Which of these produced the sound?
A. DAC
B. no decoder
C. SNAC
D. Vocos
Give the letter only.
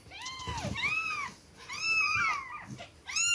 B